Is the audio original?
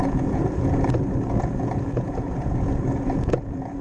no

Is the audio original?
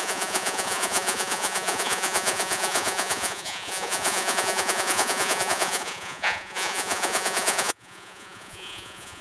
no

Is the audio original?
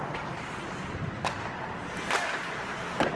yes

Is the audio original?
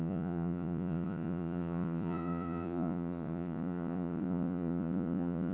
no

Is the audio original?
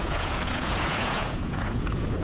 no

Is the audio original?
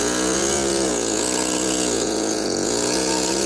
no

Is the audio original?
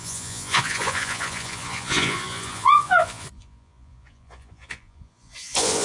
no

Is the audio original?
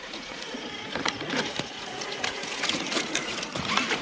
no